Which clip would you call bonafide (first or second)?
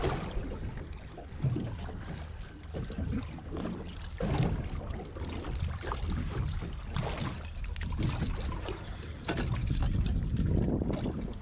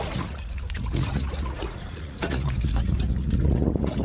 first